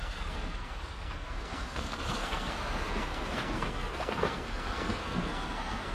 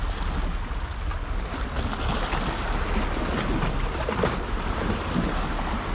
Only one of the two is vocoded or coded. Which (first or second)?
first